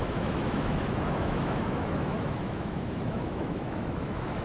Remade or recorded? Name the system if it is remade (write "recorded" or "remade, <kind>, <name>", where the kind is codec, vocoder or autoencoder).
remade, autoencoder, DAC-VAE